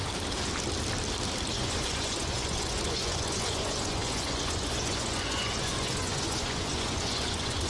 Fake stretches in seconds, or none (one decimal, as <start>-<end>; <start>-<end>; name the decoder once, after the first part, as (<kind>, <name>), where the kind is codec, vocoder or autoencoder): 1.5-7.7 (vocoder, Vocos)